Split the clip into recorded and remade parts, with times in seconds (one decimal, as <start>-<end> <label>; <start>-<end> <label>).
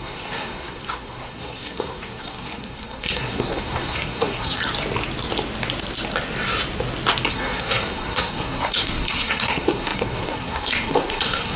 0.0-4.6 remade; 4.6-7.3 recorded; 7.3-11.6 remade